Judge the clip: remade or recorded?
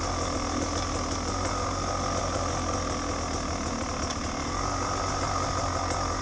recorded